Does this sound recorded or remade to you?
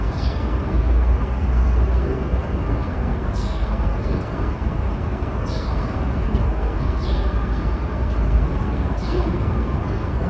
remade